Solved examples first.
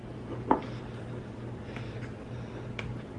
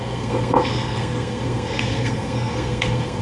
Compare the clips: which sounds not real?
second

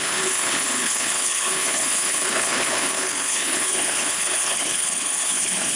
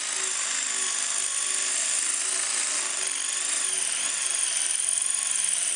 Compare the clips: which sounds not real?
first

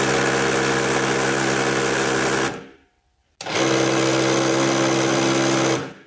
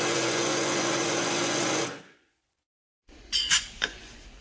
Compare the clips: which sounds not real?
second